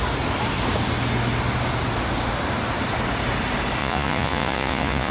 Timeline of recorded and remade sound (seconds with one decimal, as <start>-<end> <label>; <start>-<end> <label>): 0.0-3.8 recorded; 3.8-5.1 remade